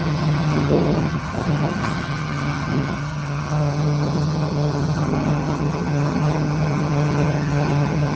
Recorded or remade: remade